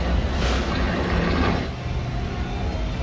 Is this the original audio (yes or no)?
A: yes